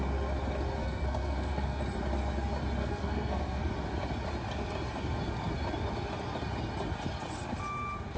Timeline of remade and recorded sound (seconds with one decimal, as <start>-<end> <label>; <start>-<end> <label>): 0.0-0.8 recorded; 0.8-1.8 remade; 1.8-2.8 recorded; 2.8-3.7 remade; 3.7-8.2 recorded